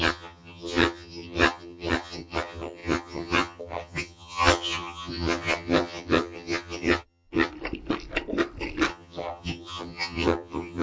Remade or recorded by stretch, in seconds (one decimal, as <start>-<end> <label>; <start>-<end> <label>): 0.0-7.5 remade; 7.5-8.9 recorded; 8.9-10.8 remade